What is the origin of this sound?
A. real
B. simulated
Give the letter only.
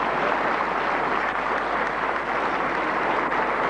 A